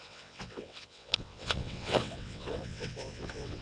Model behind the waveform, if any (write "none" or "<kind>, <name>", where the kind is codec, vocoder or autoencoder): vocoder, WaveNeXt